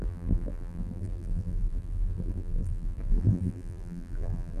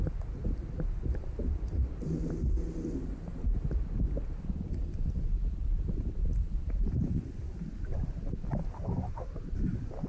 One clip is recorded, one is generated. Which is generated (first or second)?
first